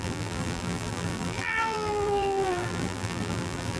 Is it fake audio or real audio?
fake